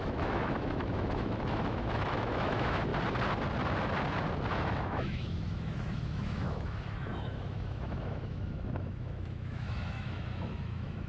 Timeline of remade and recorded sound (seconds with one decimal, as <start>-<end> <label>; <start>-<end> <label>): 0.0-2.9 remade; 2.9-4.5 recorded; 4.5-11.1 remade